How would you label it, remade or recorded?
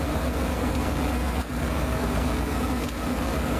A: remade